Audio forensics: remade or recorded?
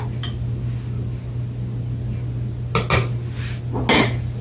recorded